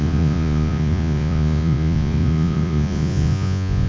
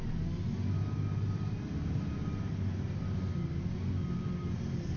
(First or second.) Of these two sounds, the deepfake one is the first